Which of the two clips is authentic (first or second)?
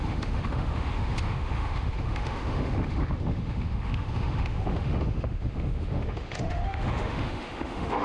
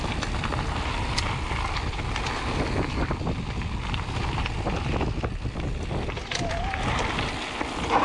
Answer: second